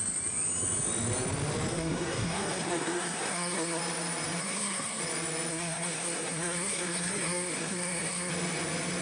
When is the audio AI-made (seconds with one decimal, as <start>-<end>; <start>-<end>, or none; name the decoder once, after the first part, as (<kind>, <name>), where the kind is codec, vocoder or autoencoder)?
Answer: 1.7-3.8 (codec, SNAC); 4.4-5.0; 5.5-8.3